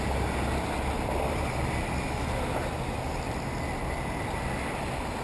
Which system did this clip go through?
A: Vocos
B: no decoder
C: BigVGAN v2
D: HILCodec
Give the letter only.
B